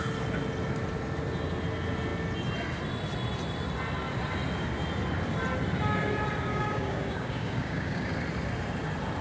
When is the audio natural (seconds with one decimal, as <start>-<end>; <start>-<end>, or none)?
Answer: 0.0-6.5; 8.1-9.2